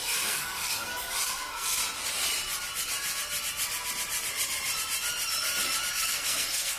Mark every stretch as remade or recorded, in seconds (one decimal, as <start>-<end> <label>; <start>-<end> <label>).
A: 0.0-1.8 remade; 1.8-5.9 recorded; 5.9-6.8 remade